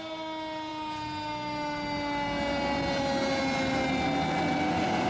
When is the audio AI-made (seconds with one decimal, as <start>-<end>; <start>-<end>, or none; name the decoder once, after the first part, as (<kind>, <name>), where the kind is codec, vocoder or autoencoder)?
none